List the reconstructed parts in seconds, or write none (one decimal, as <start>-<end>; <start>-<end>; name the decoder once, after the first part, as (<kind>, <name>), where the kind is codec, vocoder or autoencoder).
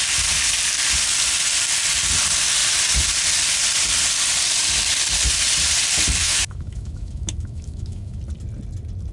6.2-8.2 (autoencoder, DAC-VAE)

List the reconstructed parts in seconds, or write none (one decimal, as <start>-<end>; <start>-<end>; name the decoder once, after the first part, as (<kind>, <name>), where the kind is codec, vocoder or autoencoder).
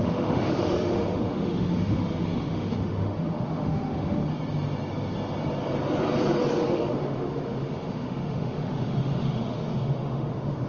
0.0-4.2 (autoencoder, DAC-VAE); 6.7-10.7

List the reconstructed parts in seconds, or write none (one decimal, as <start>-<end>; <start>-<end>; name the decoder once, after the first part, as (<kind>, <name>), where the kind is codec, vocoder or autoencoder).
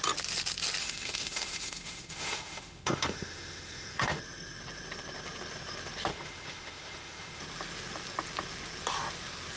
0.8-4.2 (autoencoder, DAC-VAE); 6.1-7.4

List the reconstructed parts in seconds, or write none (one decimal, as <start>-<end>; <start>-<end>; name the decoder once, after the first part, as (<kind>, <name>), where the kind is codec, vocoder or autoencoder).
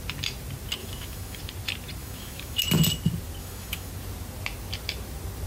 0.8-1.4 (autoencoder, DAC-VAE); 2.0-2.6; 3.4-3.9